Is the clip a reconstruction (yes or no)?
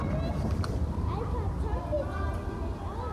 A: no